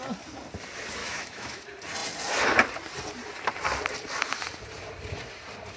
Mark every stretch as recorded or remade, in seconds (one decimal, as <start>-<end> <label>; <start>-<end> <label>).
0.0-1.0 recorded; 1.0-1.6 remade; 1.6-5.8 recorded